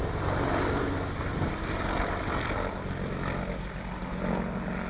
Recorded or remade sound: recorded